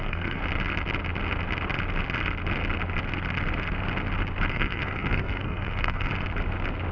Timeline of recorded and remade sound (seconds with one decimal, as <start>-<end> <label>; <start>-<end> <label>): 0.0-0.4 remade; 0.4-4.5 recorded; 4.5-6.1 remade; 6.1-6.9 recorded